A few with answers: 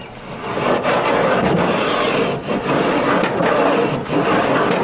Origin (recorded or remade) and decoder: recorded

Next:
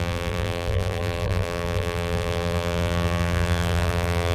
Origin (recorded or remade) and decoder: remade, vocoder, BigVGAN v2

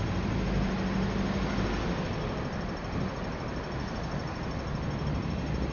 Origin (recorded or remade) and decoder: recorded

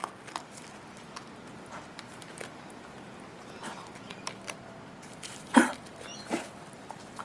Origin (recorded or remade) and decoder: remade, vocoder, BigVGAN v2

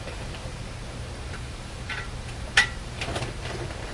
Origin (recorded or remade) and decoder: remade, vocoder, BigVGAN v2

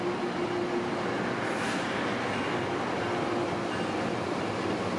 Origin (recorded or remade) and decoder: recorded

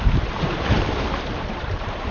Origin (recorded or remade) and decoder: remade, vocoder, BigVGAN v2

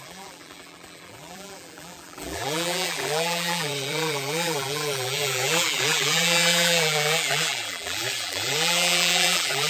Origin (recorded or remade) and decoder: remade, vocoder, BigVGAN v2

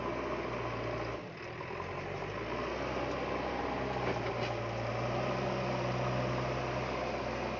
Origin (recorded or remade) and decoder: recorded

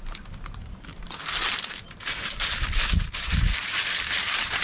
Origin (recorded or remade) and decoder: remade, vocoder, BigVGAN v2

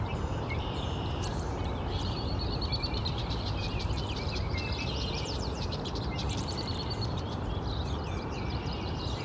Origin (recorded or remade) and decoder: remade, vocoder, BigVGAN v2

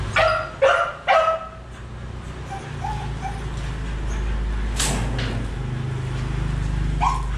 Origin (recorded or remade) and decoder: recorded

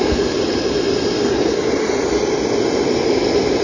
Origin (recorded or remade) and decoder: recorded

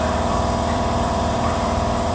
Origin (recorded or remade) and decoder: remade, vocoder, BigVGAN v2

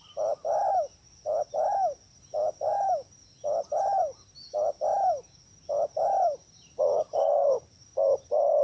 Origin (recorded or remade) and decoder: recorded